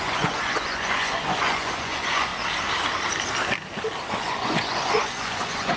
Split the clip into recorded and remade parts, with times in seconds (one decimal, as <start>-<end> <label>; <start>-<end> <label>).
0.0-2.3 remade; 2.3-4.1 recorded; 4.1-5.8 remade